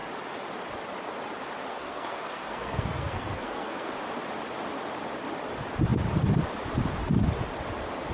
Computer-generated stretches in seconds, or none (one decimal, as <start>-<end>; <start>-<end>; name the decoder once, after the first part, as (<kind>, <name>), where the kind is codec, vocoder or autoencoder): 1.7-3.9 (codec, SNAC)